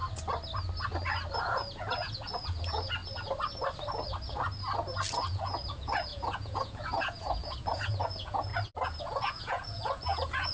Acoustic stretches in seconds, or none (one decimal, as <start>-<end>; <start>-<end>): 0.0-1.4; 3.0-5.1; 8.5-9.0